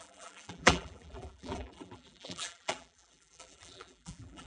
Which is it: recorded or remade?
remade